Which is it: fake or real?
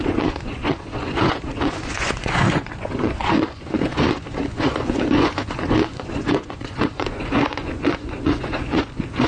fake